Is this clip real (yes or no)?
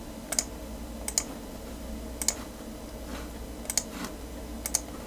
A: yes